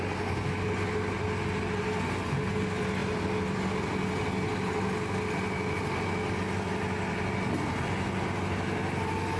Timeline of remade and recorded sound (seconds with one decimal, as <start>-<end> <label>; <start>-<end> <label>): 0.0-9.4 recorded